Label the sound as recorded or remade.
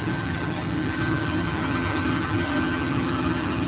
remade